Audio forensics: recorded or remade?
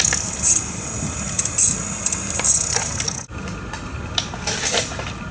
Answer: recorded